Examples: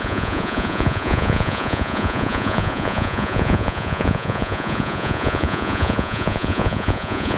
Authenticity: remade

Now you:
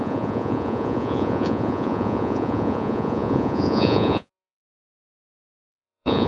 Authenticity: remade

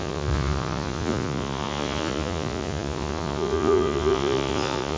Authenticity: remade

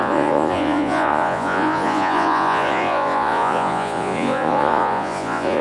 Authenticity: remade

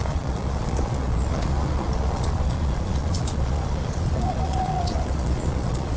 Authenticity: remade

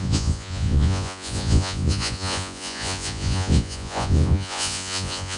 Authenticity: remade